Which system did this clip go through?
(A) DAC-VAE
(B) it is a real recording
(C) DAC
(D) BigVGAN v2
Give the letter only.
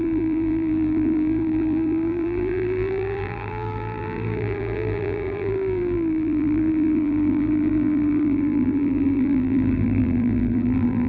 D